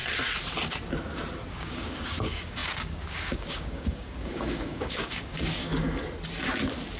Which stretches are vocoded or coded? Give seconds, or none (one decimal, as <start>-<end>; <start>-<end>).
1.5-5.7